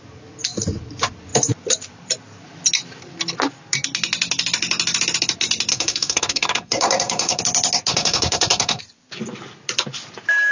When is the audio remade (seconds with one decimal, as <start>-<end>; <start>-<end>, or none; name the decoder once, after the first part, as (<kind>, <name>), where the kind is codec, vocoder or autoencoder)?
5.7-7.4 (codec, SNAC); 7.9-8.8